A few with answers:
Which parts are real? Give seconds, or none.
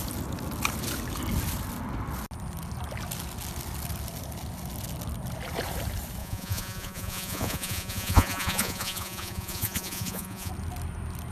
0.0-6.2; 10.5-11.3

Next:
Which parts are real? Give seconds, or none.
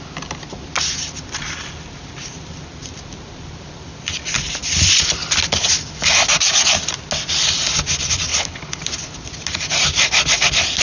0.0-8.3; 8.8-10.8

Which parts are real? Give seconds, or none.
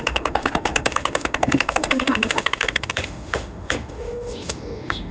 none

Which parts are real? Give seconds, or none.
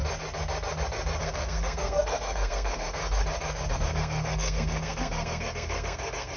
0.0-1.2; 3.0-3.7